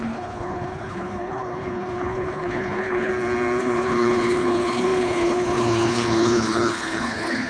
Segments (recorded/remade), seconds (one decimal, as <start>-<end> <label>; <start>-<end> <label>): 0.0-3.1 remade; 3.1-3.6 recorded; 3.6-7.5 remade